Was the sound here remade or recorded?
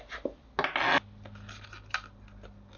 recorded